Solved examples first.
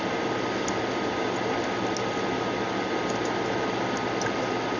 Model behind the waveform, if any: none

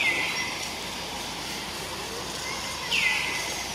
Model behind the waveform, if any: none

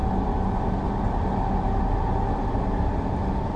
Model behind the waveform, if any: none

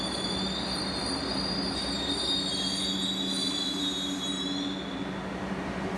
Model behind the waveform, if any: none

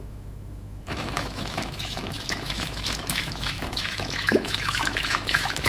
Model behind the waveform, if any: autoencoder, DAC-VAE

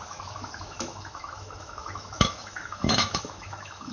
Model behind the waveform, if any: autoencoder, DAC-VAE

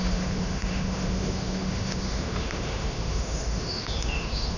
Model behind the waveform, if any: autoencoder, DAC-VAE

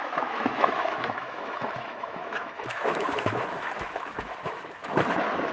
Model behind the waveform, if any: autoencoder, DAC-VAE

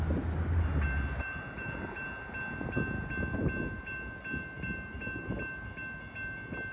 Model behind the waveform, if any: none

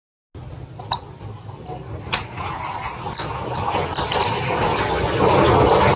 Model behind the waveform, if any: none